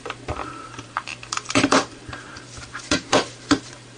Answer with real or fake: fake